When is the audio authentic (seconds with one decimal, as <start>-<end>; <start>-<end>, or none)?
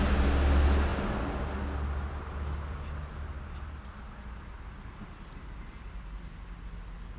0.0-7.2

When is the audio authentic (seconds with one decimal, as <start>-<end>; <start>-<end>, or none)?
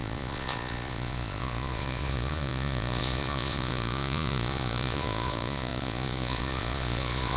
none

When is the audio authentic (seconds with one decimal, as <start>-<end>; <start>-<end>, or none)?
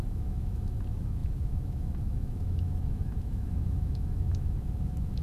none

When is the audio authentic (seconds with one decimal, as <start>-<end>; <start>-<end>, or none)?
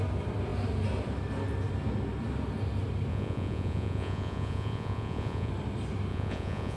0.0-3.1; 5.5-6.1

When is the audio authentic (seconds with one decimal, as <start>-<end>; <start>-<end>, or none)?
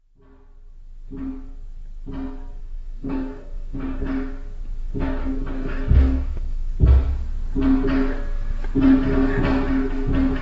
0.0-2.6; 4.1-4.8; 6.7-10.4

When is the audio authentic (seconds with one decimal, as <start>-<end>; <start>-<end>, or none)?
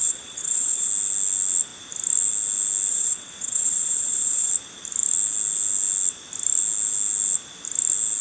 0.9-2.9; 4.5-8.2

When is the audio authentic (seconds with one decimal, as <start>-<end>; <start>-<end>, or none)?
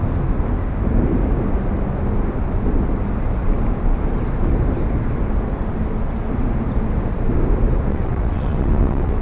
0.0-7.9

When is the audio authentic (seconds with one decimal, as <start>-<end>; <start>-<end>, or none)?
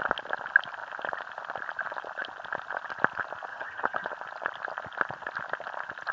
0.0-3.5; 4.1-6.1